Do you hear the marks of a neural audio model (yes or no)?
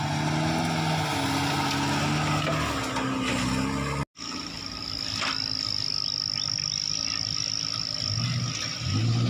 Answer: no